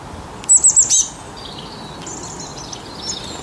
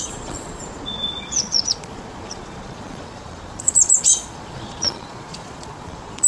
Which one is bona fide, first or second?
first